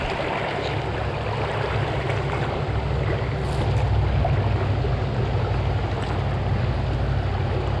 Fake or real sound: real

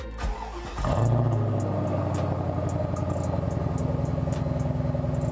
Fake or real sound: real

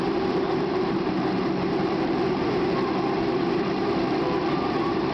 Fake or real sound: fake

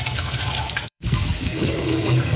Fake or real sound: fake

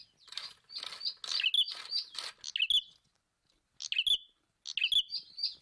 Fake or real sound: real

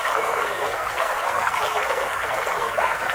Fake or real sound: fake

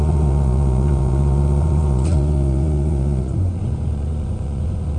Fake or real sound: fake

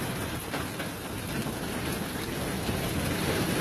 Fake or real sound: real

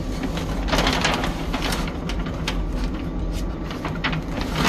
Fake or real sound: real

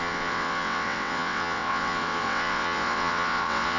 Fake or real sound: fake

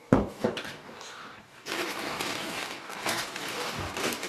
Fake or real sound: fake